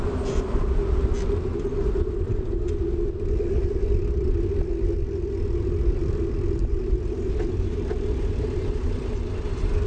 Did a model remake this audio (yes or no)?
no